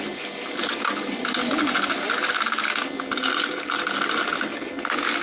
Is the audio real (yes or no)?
yes